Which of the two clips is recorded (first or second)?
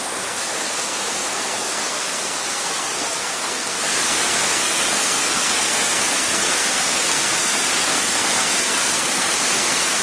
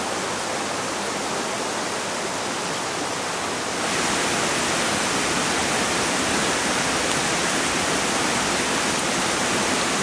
second